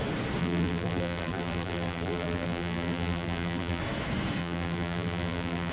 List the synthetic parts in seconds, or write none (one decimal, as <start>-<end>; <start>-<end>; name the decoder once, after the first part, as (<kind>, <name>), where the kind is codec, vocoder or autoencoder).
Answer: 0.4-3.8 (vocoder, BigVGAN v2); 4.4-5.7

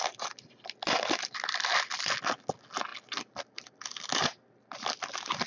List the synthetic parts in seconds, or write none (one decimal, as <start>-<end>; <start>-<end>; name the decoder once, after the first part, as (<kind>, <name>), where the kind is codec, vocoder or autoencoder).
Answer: none

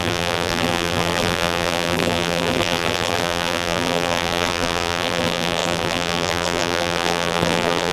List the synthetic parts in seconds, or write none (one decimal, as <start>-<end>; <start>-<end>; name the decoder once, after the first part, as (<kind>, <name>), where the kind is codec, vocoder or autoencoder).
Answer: 0.0-7.9 (vocoder, BigVGAN v2)